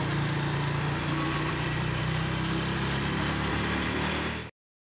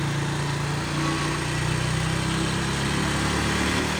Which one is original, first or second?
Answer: second